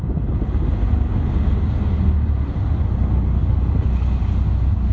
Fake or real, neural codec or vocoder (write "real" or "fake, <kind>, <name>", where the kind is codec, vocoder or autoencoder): real